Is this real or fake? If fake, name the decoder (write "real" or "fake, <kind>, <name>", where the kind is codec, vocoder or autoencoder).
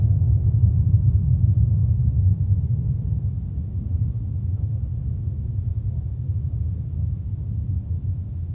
real